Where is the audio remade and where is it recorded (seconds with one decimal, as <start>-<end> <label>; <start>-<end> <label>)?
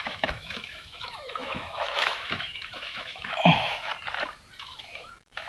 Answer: 0.0-3.9 remade; 3.9-4.6 recorded; 4.6-5.5 remade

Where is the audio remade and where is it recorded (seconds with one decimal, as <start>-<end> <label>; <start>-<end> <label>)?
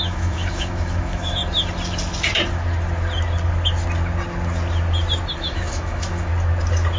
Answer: 0.0-1.4 remade; 1.4-5.4 recorded; 5.4-6.3 remade; 6.3-7.0 recorded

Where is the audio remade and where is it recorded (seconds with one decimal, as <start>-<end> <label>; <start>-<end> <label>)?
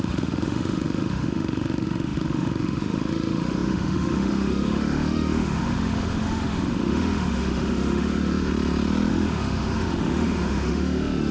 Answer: 0.0-8.5 remade; 8.5-9.1 recorded; 9.1-11.3 remade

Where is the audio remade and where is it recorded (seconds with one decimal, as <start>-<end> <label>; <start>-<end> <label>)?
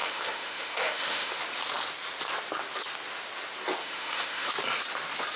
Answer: 0.0-1.4 remade; 1.4-3.8 recorded; 3.8-4.5 remade; 4.5-5.4 recorded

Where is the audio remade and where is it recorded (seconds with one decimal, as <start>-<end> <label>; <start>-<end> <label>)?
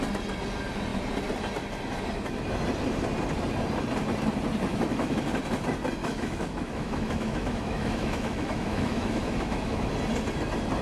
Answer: 0.0-4.7 recorded; 4.7-5.2 remade; 5.2-6.0 recorded; 6.0-9.9 remade; 9.9-10.8 recorded